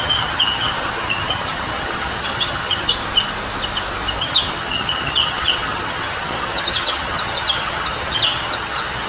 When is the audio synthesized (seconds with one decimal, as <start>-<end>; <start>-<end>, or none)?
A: 0.0-2.9; 4.2-9.1